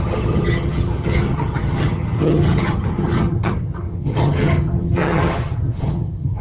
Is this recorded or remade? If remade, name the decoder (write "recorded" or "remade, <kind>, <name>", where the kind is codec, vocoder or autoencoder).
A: remade, vocoder, HiFi-GAN